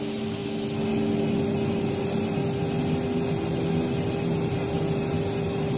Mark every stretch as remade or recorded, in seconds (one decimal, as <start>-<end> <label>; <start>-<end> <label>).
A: 0.0-5.8 recorded